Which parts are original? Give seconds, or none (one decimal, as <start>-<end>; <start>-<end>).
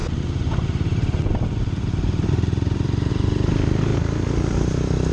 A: 3.1-3.9